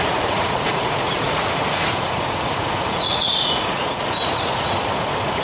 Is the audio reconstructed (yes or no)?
yes